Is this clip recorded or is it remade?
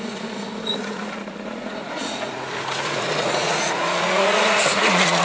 remade